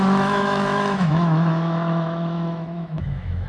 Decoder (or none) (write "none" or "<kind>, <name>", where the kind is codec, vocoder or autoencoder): autoencoder, DAC-VAE